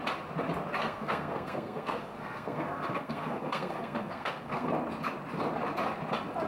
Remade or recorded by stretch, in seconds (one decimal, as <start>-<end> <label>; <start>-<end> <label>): 0.0-0.8 recorded; 0.8-4.7 remade; 4.7-6.5 recorded